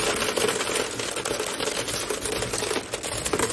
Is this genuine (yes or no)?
yes